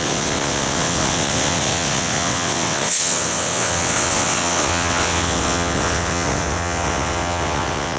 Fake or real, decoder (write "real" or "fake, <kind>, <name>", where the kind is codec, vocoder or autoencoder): fake, vocoder, WaveNeXt